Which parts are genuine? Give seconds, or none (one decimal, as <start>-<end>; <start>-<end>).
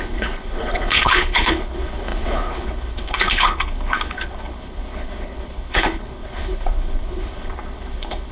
none